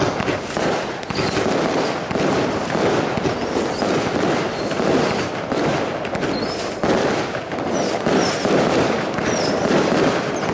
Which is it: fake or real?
real